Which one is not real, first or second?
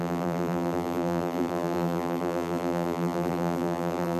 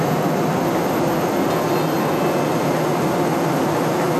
first